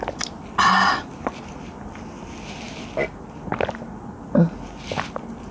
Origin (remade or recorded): recorded